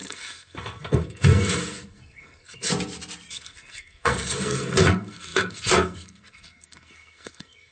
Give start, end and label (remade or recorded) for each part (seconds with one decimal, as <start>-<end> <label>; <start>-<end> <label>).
0.0-2.7 remade; 2.7-3.3 recorded; 3.3-7.7 remade